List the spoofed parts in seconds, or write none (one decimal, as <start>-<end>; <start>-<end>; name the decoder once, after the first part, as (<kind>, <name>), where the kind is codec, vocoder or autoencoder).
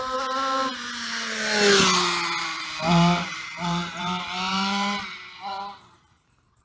0.0-0.7 (vocoder, BigVGAN v2); 2.4-6.6